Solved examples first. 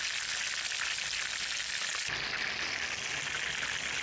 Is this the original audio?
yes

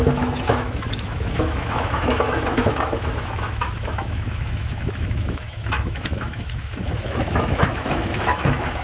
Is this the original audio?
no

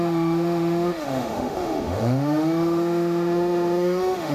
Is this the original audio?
no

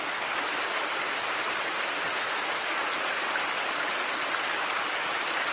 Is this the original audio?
yes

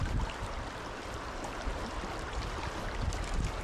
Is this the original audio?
yes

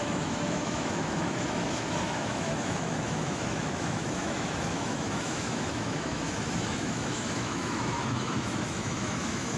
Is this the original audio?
no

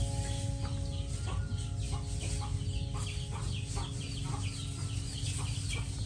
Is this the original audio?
yes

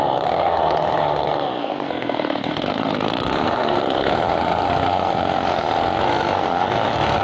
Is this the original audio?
no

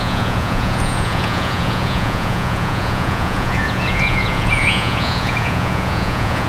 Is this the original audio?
no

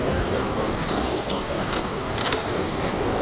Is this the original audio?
no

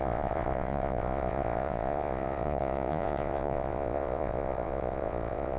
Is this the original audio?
no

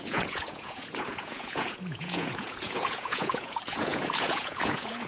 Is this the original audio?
no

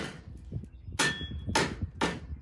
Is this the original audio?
yes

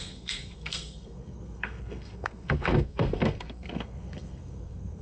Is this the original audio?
no